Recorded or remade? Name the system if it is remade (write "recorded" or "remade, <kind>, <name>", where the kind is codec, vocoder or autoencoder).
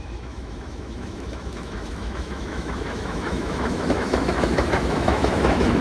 remade, autoencoder, DAC-VAE